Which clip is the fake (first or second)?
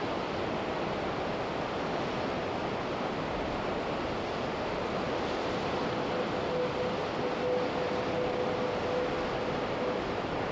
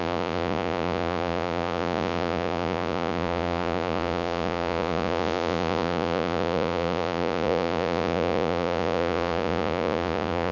second